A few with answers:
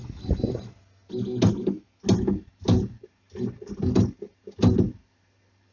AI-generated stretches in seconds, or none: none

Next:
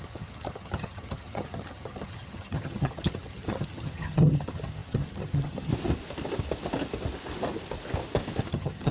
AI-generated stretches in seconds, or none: 0.0-5.7 (vocoder, HiFi-GAN); 8.5-8.9

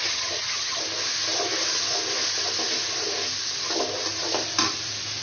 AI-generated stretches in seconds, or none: 0.0-0.8 (vocoder, HiFi-GAN)

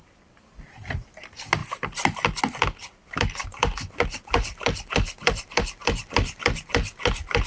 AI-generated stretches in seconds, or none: none